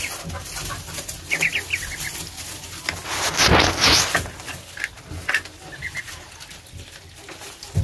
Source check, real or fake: real